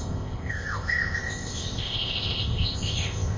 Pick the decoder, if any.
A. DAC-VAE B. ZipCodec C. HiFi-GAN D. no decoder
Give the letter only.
B